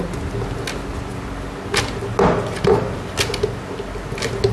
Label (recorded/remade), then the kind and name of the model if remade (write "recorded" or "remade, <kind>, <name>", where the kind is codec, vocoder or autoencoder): recorded